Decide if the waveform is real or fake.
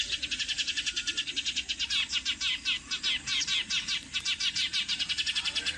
fake